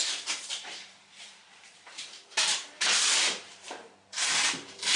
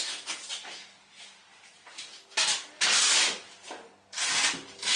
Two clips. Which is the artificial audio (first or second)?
first